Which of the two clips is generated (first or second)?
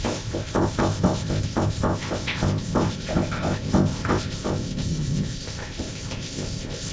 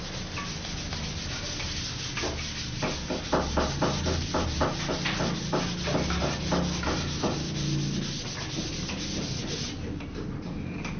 first